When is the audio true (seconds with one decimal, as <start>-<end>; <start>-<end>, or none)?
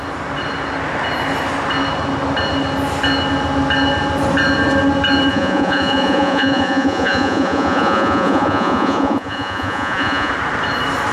0.0-5.3; 10.3-11.1